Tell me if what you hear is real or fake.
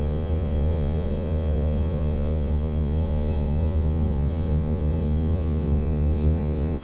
fake